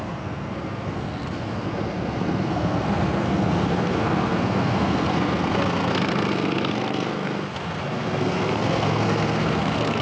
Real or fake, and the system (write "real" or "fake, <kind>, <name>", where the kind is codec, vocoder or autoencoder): fake, codec, SNAC